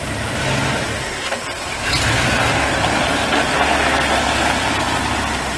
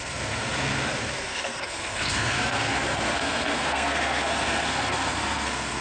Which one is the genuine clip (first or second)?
first